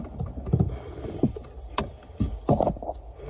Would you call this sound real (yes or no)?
yes